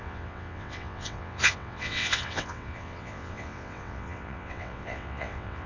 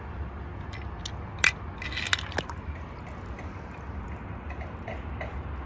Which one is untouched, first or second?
second